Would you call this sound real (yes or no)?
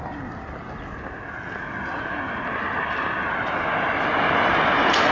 yes